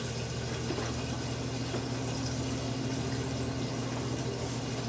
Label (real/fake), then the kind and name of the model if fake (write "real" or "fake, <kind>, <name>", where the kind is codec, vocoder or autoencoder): real